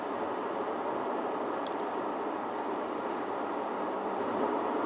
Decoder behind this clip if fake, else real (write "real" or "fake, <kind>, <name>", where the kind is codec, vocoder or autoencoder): real